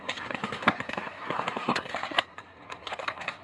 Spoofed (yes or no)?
yes